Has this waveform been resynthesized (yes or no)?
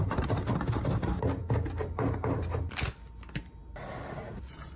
no